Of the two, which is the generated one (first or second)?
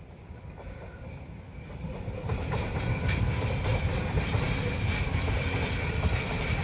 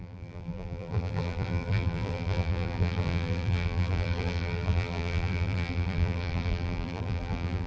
second